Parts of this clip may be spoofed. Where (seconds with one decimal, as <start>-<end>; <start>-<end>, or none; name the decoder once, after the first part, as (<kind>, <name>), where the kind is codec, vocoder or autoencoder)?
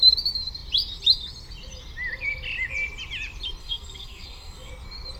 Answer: 3.6-4.7 (codec, SNAC)